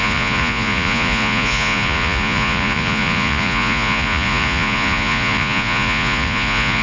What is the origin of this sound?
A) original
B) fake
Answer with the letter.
B